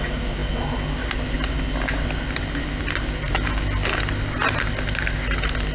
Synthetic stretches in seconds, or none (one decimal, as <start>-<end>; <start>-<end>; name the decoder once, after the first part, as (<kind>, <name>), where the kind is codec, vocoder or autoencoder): none